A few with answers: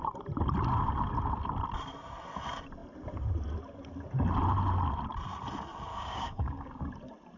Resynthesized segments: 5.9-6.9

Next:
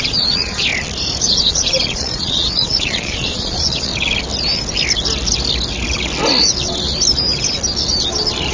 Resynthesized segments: 0.0-0.7; 1.2-3.9